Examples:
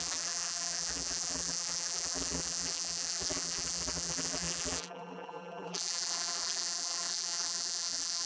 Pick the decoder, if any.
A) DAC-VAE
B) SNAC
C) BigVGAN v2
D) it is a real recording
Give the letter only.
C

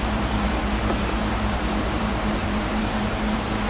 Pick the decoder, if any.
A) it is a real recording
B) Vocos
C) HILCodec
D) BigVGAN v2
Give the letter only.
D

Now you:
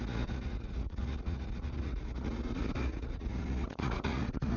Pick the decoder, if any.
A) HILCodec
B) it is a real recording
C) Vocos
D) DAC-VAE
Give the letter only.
C